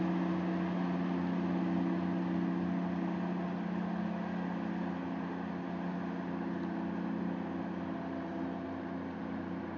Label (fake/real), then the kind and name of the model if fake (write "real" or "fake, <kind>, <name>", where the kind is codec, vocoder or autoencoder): real